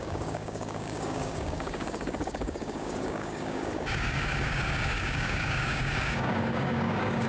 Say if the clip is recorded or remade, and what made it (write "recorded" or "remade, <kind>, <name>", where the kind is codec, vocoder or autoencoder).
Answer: remade, codec, DAC